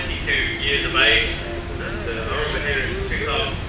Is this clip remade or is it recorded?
recorded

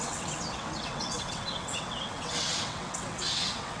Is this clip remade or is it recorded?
remade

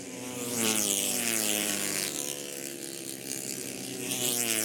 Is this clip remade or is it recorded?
remade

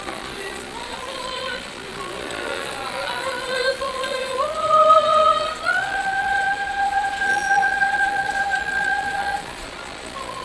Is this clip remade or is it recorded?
remade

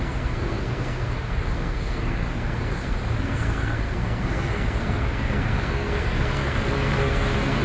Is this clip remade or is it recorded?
remade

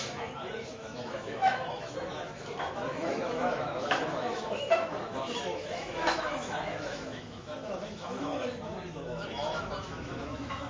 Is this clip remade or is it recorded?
remade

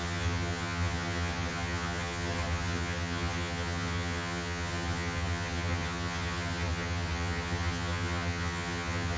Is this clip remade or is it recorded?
remade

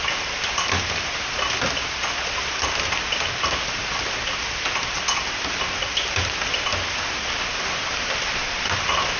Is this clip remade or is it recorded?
recorded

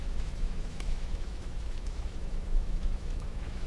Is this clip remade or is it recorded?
remade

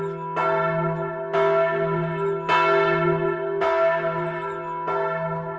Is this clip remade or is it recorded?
recorded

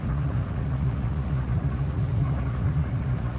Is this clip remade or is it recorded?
remade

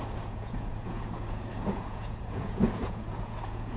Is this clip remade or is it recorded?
remade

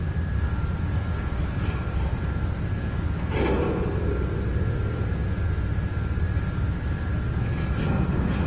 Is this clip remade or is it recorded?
recorded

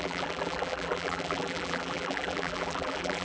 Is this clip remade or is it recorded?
remade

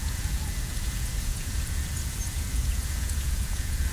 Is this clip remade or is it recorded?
remade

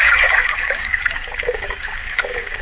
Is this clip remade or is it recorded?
remade